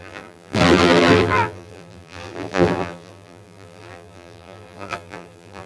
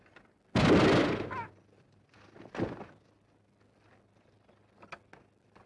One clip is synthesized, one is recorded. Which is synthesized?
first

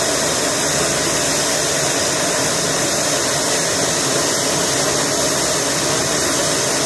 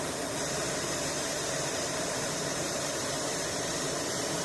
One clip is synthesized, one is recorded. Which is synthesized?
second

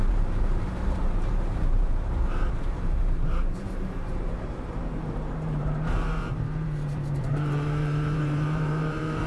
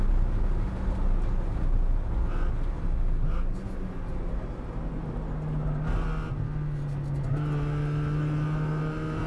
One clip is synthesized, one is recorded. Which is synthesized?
first